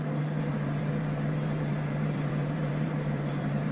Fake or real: fake